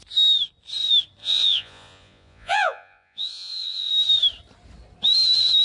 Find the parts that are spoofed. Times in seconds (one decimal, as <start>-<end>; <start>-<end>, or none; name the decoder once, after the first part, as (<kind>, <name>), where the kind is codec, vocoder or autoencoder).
1.2-3.9 (vocoder, Vocos)